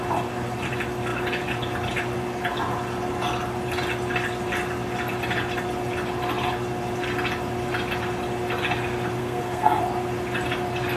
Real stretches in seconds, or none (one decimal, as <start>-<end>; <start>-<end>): 0.0-9.2; 9.8-11.0